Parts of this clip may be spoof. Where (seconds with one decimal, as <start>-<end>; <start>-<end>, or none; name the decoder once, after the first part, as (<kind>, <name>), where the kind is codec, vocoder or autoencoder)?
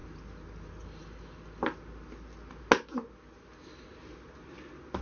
none